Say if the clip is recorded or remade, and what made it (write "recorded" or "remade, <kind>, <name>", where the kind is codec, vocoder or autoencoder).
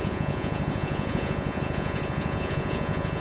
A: remade, vocoder, Vocos